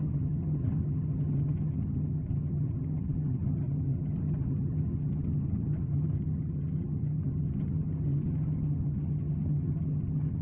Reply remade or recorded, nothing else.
remade